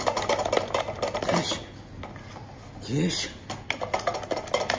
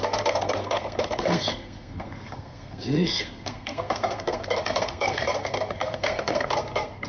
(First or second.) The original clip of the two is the first